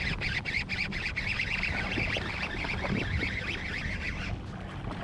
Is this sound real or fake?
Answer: real